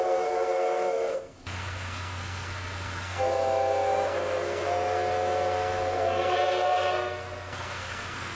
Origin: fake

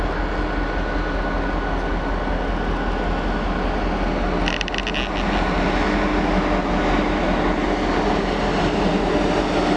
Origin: real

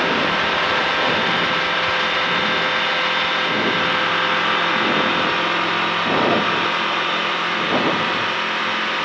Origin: real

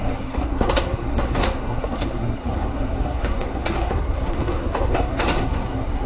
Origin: fake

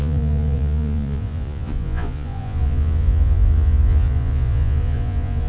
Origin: fake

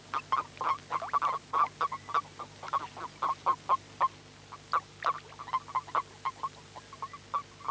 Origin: real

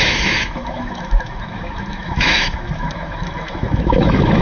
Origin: fake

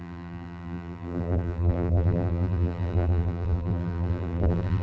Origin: fake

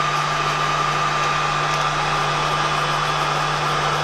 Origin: real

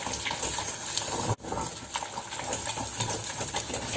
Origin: real